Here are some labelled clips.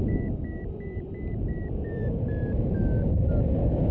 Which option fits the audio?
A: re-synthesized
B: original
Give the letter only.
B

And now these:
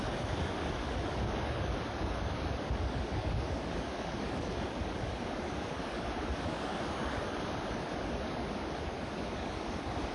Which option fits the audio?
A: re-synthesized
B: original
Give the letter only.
A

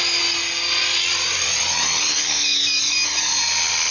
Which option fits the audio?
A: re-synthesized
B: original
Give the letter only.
B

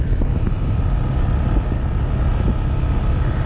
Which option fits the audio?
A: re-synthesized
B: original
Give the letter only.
B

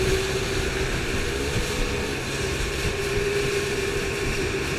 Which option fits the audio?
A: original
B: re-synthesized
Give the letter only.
B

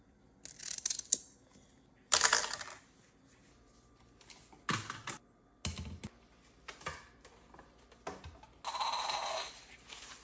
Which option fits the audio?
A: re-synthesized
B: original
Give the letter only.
B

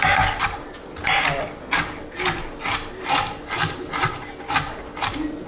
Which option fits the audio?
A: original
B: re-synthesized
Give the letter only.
A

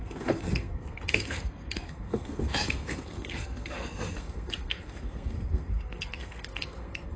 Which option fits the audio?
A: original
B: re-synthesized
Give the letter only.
B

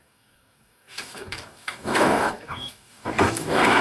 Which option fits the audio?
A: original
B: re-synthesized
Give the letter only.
B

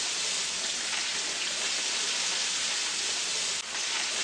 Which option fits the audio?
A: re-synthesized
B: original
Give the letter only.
B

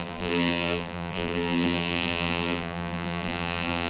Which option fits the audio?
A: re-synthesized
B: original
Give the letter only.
A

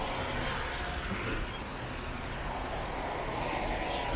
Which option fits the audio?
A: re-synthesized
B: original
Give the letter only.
B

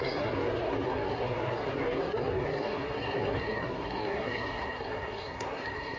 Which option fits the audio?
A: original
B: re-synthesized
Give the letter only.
B